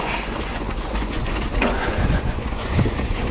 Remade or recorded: remade